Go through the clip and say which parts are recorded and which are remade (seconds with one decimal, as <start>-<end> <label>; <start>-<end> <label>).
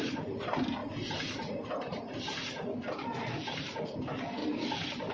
0.0-0.8 recorded; 0.8-2.0 remade; 2.0-4.4 recorded; 4.4-5.1 remade